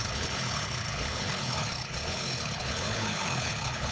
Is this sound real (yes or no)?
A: no